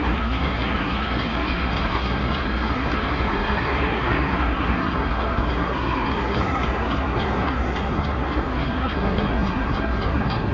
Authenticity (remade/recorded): remade